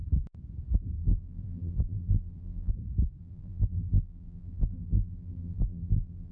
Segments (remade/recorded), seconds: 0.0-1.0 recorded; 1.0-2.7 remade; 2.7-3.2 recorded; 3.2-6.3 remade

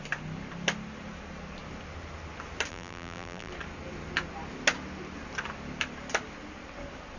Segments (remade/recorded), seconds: 0.0-2.7 recorded; 2.7-3.5 remade; 3.5-7.2 recorded

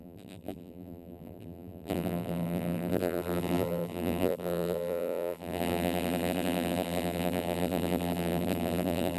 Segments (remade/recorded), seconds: 0.0-9.2 remade

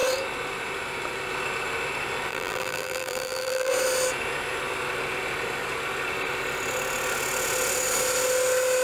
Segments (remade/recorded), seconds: 0.0-2.3 recorded; 2.3-3.7 remade; 3.7-8.8 recorded

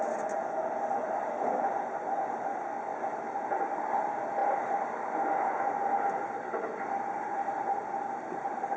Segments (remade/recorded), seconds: 0.0-8.8 recorded